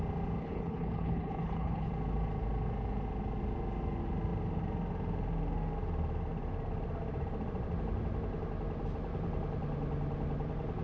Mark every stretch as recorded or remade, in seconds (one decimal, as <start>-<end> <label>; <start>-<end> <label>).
0.0-0.4 recorded; 0.4-1.9 remade; 1.9-10.8 recorded